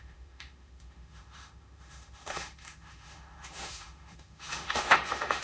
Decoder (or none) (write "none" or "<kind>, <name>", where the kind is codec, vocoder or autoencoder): autoencoder, DAC-VAE